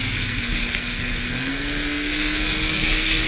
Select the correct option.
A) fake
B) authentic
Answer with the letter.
A